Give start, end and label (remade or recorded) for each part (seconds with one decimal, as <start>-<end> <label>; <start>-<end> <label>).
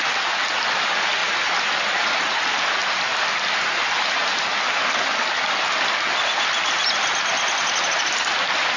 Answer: 0.0-8.8 recorded